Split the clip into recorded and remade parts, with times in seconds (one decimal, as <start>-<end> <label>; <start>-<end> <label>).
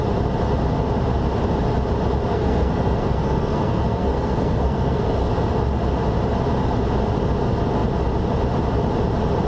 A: 0.0-2.3 recorded; 2.3-5.3 remade; 5.3-9.5 recorded